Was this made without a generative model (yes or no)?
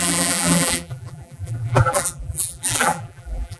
no